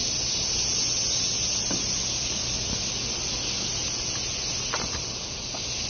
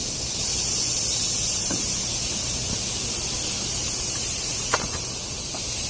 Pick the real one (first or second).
first